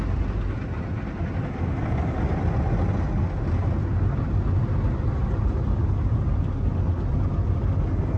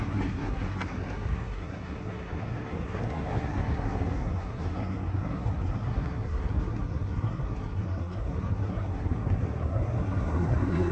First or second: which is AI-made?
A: second